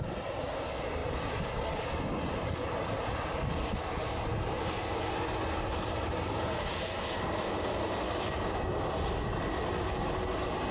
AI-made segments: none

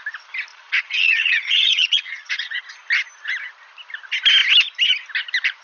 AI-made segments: 0.5-2.6 (vocoder, Vocos)

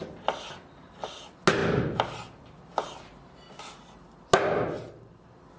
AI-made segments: none

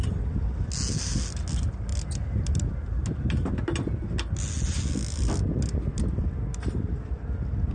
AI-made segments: none

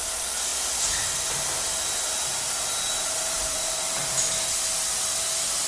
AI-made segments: 2.9-4.3 (vocoder, BigVGAN v2)

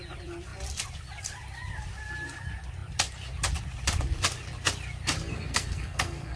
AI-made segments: 5.3-6.4 (codec, SNAC)